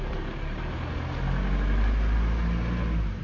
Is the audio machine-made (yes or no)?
no